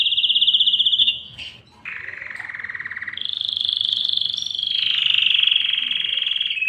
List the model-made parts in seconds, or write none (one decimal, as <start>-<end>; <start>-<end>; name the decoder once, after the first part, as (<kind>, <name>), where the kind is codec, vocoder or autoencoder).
1.0-1.6 (codec, SNAC)